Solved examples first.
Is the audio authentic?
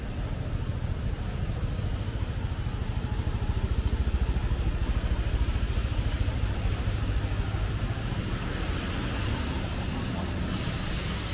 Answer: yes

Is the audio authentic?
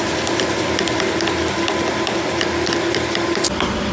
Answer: yes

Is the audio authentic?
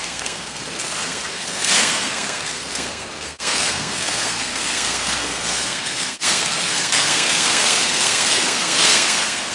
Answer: no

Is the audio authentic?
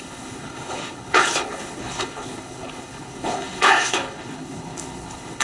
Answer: no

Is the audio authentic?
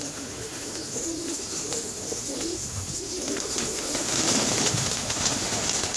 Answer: no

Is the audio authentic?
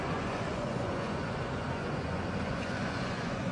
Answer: no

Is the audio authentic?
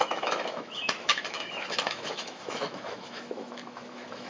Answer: no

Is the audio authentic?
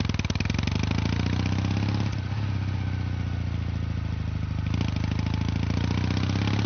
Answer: yes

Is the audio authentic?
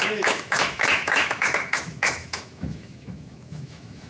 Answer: no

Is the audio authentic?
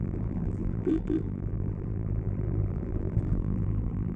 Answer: no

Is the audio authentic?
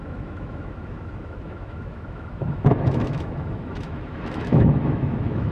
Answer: no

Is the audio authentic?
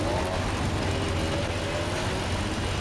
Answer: yes